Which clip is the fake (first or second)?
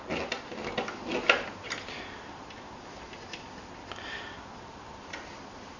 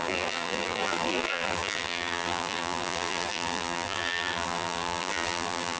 second